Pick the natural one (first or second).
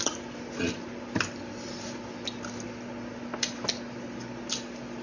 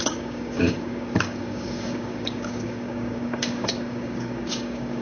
first